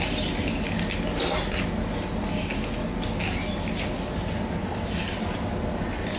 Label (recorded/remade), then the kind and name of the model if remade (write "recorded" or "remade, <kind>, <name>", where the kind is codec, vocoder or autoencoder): recorded